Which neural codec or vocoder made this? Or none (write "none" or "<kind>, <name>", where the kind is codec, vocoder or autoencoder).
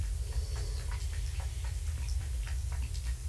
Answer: none